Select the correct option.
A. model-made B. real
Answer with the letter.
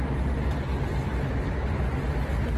B